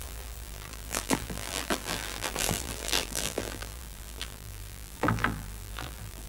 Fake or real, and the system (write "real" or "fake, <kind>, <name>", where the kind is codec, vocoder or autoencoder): fake, vocoder, BigVGAN v2